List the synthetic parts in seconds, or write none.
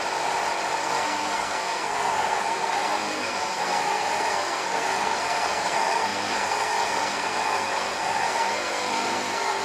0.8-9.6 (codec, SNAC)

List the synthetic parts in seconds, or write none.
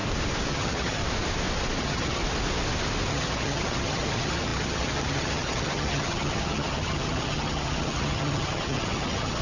0.5-1.0 (vocoder, HiFi-GAN); 1.8-2.2; 3.1-9.4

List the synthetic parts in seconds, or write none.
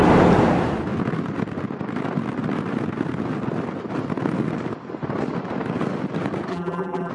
6.5-7.1 (vocoder, BigVGAN v2)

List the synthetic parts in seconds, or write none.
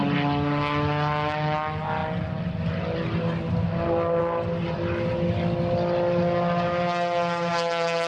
none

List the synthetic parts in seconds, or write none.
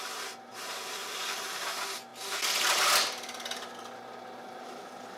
none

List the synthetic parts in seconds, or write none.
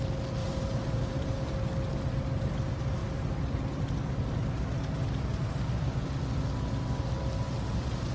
0.4-1.5 (vocoder, BigVGAN v2)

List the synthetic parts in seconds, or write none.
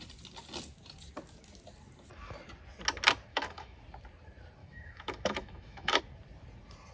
3.3-3.8 (autoencoder, DAC-VAE); 4.6-6.0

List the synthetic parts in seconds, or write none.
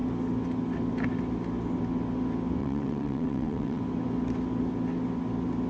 2.6-3.8 (vocoder, WaveNeXt)